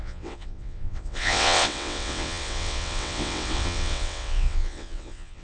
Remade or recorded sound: remade